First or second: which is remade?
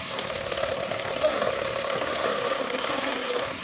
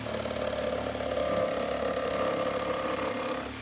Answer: first